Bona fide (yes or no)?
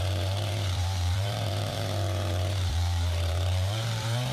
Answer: no